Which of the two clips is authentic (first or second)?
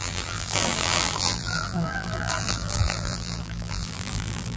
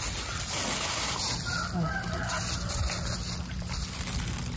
second